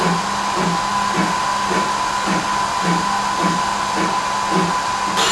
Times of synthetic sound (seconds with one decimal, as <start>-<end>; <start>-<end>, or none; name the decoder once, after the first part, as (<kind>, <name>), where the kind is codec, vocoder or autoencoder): none